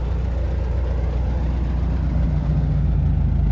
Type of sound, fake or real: real